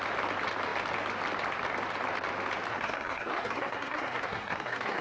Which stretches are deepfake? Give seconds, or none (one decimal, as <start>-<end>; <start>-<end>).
2.7-5.0